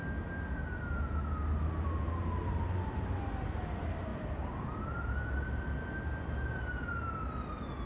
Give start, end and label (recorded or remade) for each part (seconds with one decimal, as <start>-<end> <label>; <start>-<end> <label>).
0.0-7.9 recorded